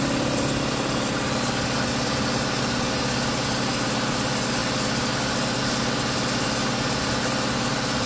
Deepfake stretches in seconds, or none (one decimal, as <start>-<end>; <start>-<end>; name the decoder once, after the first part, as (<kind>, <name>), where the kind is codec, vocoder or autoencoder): none